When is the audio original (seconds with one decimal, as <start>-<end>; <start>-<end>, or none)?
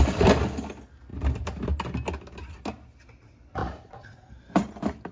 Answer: 0.0-3.6; 4.3-5.1